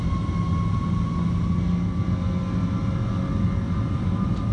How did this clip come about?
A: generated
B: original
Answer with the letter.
B